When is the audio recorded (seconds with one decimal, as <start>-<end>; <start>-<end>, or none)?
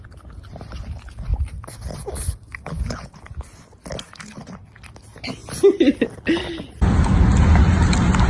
0.0-8.3